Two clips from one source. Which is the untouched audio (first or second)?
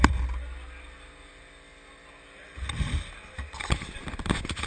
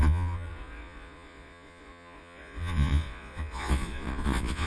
first